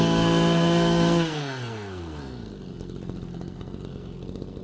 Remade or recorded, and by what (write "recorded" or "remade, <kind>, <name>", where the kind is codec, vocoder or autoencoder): remade, codec, SNAC